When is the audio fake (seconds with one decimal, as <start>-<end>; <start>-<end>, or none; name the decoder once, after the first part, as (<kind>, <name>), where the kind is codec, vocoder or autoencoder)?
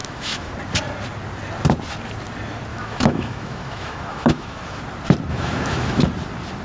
0.0-0.5 (autoencoder, DAC-VAE); 2.7-4.8; 5.3-6.0